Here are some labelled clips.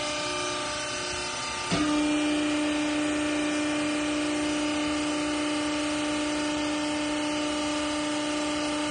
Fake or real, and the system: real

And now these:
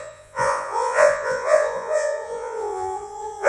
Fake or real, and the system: fake, vocoder, Vocos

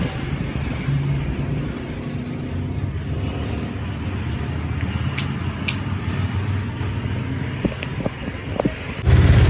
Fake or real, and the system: real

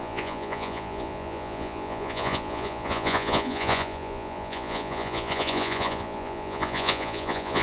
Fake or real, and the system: fake, vocoder, Vocos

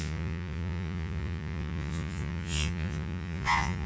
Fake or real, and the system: fake, vocoder, Vocos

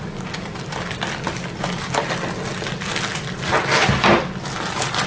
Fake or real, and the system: real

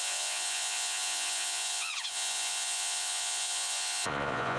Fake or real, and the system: fake, vocoder, Vocos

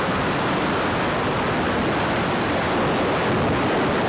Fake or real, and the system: real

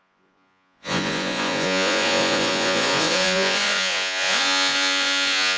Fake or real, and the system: fake, vocoder, Vocos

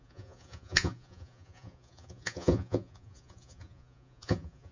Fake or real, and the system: fake, vocoder, Vocos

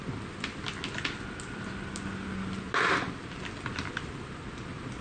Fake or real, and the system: real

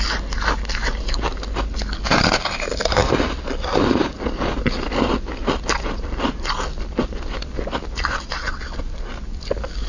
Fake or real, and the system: real